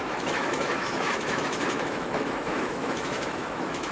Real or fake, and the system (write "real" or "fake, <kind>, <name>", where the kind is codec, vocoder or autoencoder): fake, autoencoder, DAC-VAE